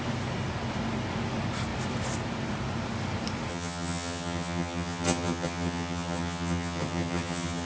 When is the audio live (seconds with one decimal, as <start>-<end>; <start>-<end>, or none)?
0.0-3.5